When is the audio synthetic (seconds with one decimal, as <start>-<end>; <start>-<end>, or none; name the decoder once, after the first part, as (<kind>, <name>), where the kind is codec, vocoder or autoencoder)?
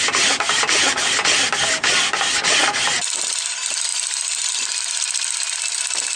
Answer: none